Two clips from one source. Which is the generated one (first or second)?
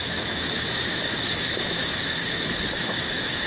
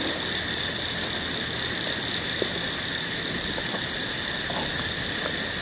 first